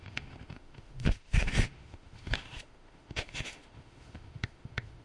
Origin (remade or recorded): remade